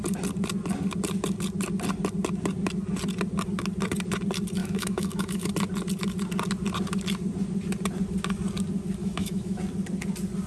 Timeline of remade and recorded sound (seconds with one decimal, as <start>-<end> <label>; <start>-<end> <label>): 0.0-4.6 recorded; 4.6-5.5 remade; 5.5-9.0 recorded; 9.0-9.6 remade; 9.6-10.5 recorded